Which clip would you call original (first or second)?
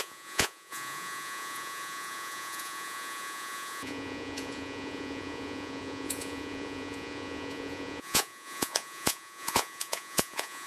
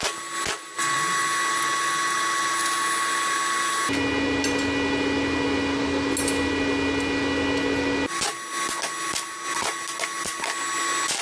second